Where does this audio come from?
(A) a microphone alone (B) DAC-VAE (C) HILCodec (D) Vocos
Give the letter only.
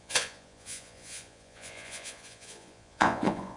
D